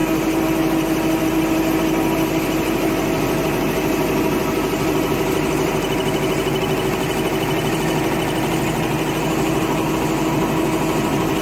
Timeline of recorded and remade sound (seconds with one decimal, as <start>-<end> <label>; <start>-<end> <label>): 0.0-11.4 recorded